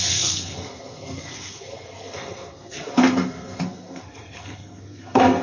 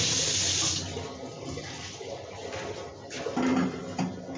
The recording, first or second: second